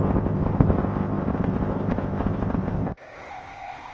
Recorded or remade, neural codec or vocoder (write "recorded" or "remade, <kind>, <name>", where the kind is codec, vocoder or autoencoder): remade, codec, ZipCodec